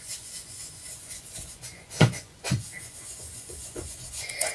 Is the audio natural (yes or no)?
no